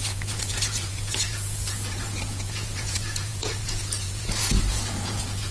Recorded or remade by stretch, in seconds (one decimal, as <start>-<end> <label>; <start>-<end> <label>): 0.0-5.5 remade

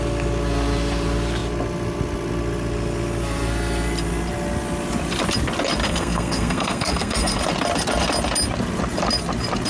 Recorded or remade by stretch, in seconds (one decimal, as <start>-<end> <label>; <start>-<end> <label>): 0.0-5.8 recorded; 5.8-7.4 remade; 7.4-9.7 recorded

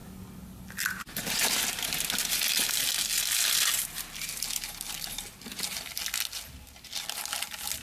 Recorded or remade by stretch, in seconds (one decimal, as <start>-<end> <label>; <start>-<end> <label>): 0.0-7.8 recorded

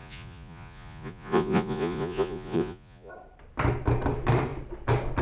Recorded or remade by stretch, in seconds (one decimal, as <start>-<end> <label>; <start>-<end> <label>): 0.0-3.1 remade; 3.1-5.2 recorded

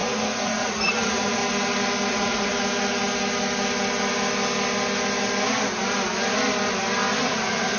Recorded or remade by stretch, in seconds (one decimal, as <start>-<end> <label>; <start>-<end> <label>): 0.0-1.4 remade; 1.4-2.1 recorded; 2.1-2.5 remade; 2.5-7.2 recorded; 7.2-7.8 remade

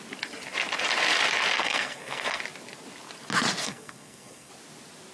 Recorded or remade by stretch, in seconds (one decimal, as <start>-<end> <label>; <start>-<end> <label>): 0.0-1.6 recorded; 1.6-2.4 remade; 2.4-3.6 recorded; 3.6-4.5 remade; 4.5-5.1 recorded